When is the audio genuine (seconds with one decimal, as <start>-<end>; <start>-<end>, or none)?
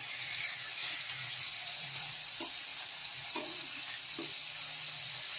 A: 0.0-0.8; 2.3-2.7; 3.8-5.4